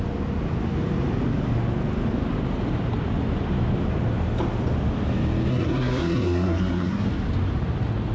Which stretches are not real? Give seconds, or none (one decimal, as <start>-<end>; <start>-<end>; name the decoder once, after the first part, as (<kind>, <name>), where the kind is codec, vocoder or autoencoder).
5.5-7.1 (codec, SNAC)